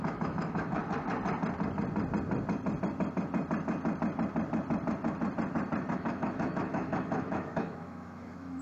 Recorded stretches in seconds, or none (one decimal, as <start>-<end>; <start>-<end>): 0.8-5.9